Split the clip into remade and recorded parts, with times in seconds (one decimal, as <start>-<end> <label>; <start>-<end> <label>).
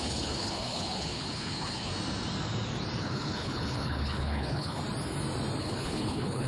0.0-1.9 remade; 1.9-3.0 recorded; 3.0-4.8 remade; 4.8-5.6 recorded; 5.6-6.5 remade